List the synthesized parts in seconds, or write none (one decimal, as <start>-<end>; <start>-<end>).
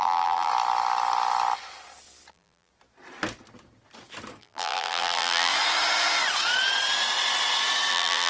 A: 0.0-0.5; 2.3-2.7; 4.4-5.5; 7.9-8.3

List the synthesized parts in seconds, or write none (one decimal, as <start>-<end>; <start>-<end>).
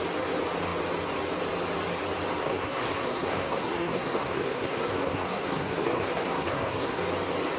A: 2.4-7.0